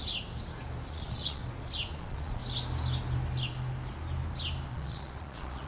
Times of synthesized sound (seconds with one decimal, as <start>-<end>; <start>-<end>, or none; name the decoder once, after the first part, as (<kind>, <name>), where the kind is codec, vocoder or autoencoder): 0.9-1.4 (vocoder, Vocos); 1.9-2.4; 4.7-5.7